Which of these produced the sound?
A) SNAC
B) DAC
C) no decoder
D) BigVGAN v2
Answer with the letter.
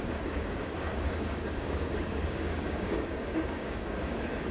B